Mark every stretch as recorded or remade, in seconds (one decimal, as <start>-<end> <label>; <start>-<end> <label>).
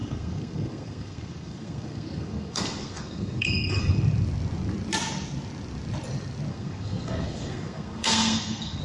0.0-3.8 remade; 3.8-6.5 recorded; 6.5-8.8 remade